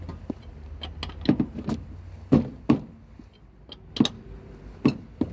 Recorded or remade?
recorded